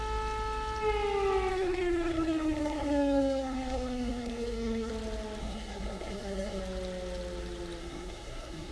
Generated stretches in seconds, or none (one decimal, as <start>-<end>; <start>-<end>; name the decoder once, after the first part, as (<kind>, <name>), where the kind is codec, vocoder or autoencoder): 1.5-4.9 (codec, SNAC); 5.4-6.6; 7.8-8.7